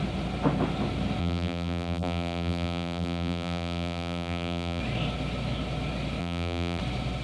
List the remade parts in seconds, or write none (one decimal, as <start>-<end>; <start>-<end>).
1.2-4.8; 6.2-6.8